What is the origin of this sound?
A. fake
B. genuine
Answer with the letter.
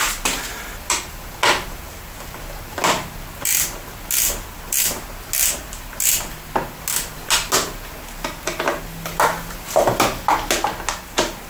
B